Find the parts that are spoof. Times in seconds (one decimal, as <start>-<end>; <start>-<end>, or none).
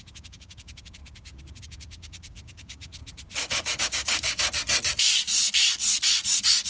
0.0-1.0; 1.6-3.0; 3.8-4.4; 6.3-6.7